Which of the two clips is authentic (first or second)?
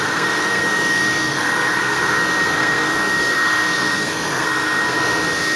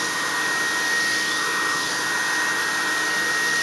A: second